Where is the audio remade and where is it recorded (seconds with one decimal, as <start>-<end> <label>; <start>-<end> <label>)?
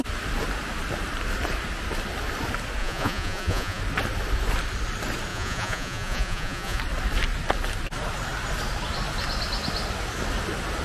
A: 0.0-2.8 recorded; 2.8-3.8 remade; 3.8-5.3 recorded; 5.3-6.8 remade; 6.8-10.8 recorded